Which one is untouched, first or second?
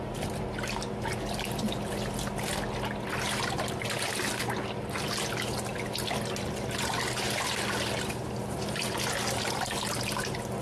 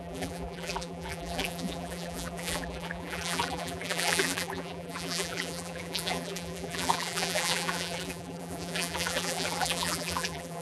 first